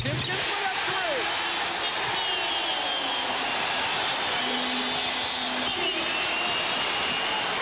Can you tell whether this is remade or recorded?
recorded